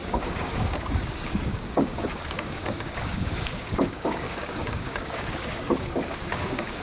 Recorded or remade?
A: remade